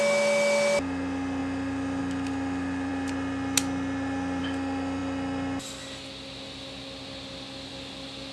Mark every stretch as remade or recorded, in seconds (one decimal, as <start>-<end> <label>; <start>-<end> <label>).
0.0-8.3 recorded